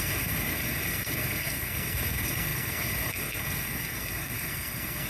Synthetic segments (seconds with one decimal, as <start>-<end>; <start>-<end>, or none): 0.0-5.1